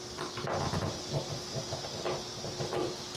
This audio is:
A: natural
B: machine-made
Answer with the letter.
A